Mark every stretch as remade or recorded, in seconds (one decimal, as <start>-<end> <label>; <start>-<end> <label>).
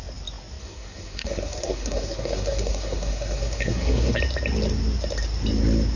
0.0-0.6 recorded; 0.6-4.2 remade; 4.2-6.0 recorded